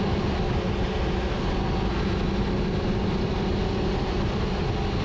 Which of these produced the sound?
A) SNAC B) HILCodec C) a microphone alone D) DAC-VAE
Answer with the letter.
C